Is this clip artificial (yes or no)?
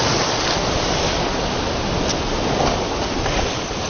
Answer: no